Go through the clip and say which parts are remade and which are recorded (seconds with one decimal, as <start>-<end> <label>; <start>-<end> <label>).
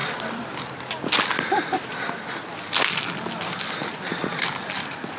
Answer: 0.0-5.2 recorded